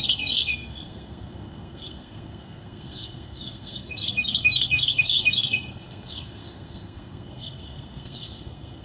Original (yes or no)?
no